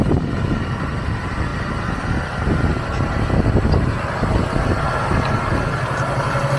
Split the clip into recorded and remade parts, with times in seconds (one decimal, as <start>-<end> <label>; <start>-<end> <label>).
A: 0.0-6.6 recorded